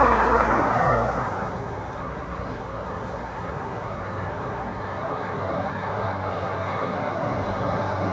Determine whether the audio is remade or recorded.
remade